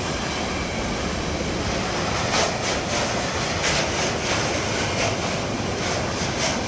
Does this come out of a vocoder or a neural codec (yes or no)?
no